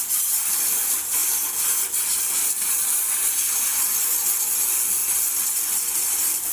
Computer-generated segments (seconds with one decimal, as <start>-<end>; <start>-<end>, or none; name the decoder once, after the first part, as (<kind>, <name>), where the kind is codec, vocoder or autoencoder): 0.0-1.2 (vocoder, BigVGAN v2); 2.3-3.2; 4.5-5.0; 5.9-6.5